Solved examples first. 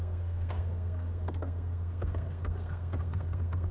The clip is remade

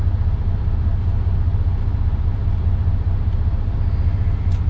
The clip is recorded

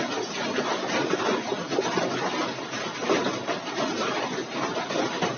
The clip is recorded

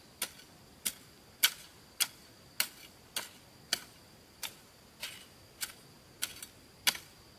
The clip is recorded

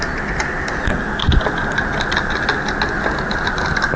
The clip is recorded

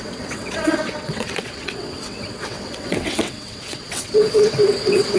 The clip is remade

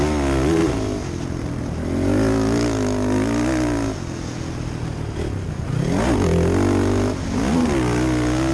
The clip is recorded